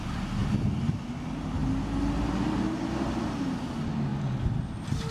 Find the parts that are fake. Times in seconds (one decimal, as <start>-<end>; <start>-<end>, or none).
none